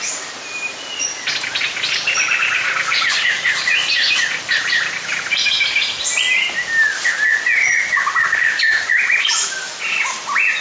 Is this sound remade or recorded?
recorded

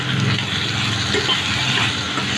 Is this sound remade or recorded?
recorded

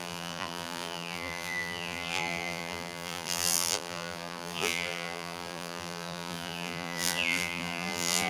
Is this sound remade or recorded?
remade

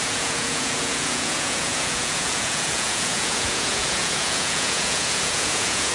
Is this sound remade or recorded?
remade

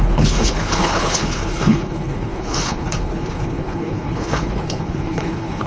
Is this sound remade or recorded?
remade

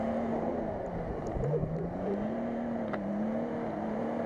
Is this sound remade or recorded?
remade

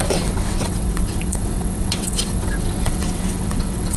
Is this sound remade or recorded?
remade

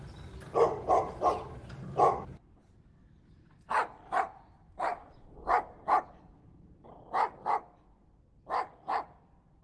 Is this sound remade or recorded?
recorded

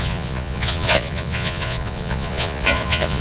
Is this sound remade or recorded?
remade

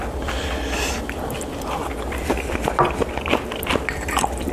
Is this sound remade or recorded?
recorded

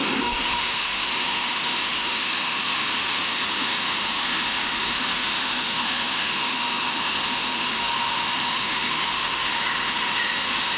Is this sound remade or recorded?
remade